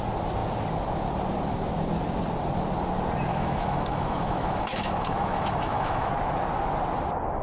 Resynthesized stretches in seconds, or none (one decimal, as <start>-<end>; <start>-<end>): 3.3-6.1